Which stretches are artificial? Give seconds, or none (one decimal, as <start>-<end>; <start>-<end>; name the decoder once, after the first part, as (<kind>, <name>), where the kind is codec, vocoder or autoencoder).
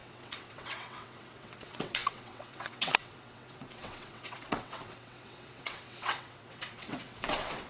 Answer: 0.0-7.7 (vocoder, WaveNeXt)